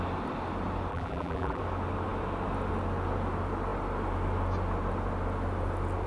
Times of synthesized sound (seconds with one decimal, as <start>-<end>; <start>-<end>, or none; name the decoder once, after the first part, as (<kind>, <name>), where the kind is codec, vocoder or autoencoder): 0.9-1.6 (vocoder, BigVGAN v2)